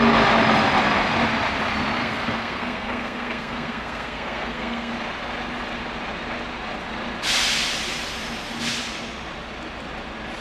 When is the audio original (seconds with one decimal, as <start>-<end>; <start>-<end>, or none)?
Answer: 0.0-2.0; 4.9-10.4